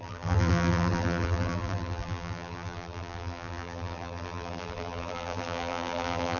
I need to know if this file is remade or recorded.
remade